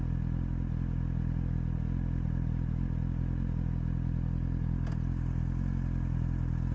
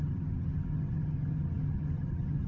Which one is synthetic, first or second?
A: second